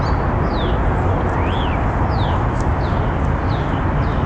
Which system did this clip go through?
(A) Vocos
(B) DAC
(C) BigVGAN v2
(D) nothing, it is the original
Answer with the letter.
D